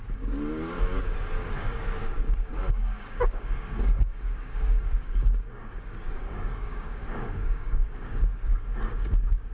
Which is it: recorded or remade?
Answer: remade